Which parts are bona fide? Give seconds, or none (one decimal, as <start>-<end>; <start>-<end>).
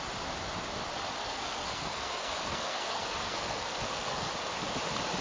0.0-1.2; 4.3-5.2